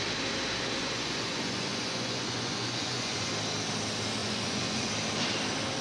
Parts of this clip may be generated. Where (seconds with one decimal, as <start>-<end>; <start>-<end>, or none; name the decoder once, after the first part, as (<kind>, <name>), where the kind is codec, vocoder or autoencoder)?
0.8-3.3 (vocoder, Vocos); 4.2-4.9